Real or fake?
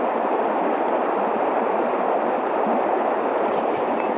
real